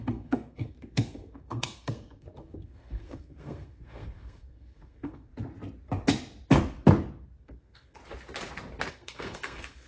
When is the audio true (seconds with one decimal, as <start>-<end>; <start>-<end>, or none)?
5.3-7.4; 8.0-8.9

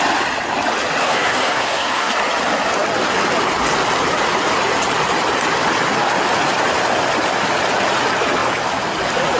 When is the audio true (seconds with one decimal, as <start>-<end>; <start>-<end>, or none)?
0.0-1.0; 2.1-9.4